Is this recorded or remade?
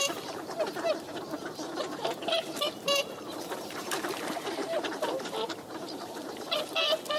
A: remade